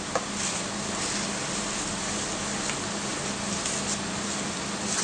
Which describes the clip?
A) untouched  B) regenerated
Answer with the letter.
A